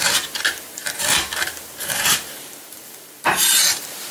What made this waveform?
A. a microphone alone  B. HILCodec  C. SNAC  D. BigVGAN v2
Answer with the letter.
D